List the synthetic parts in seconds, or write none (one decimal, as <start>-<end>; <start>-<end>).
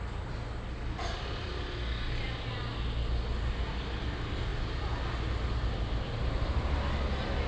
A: none